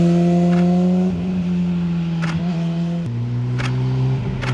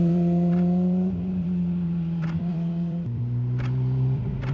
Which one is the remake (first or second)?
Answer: second